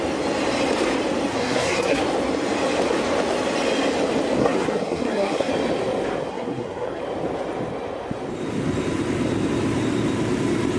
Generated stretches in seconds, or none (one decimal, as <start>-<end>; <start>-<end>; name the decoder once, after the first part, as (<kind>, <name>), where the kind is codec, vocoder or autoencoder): 1.3-2.0 (codec, SNAC); 4.4-5.5; 6.3-7.0